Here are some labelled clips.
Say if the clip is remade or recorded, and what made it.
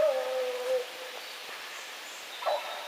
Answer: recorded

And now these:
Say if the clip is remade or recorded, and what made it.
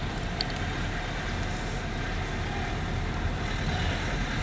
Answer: recorded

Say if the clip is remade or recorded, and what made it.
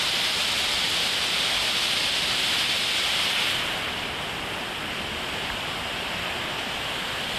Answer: recorded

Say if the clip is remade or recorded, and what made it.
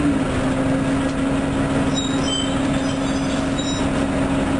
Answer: recorded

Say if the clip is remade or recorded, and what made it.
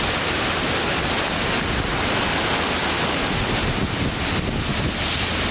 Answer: recorded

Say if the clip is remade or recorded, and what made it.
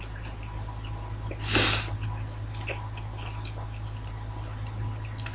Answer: recorded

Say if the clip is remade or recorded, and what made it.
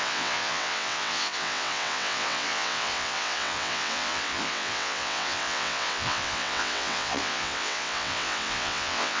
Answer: remade, vocoder, WaveNeXt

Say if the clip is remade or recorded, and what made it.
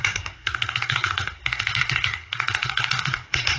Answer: remade, codec, SNAC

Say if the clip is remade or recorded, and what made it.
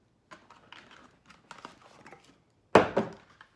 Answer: recorded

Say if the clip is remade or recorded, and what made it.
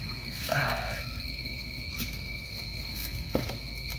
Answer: remade, codec, SNAC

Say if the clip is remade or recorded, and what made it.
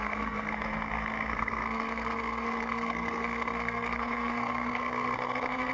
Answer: remade, codec, SNAC